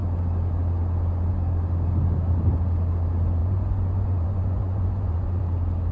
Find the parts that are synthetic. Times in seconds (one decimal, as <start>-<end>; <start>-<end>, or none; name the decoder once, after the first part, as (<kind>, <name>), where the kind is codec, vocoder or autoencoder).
3.4-5.4 (vocoder, Vocos)